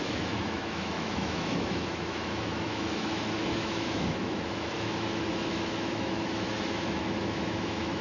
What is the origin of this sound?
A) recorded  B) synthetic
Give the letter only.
B